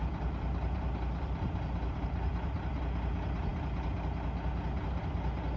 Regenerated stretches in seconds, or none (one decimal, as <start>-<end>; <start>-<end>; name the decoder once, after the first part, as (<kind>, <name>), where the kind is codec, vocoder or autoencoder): 0.0-2.8 (vocoder, BigVGAN v2)